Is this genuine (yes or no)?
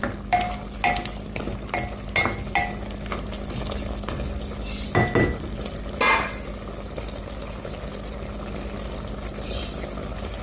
yes